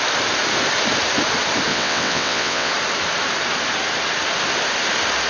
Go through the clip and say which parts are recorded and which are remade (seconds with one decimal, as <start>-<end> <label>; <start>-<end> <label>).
0.0-1.7 recorded; 1.7-2.7 remade; 2.7-5.3 recorded